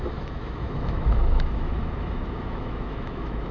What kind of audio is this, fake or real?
fake